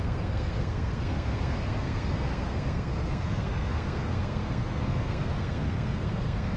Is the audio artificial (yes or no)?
yes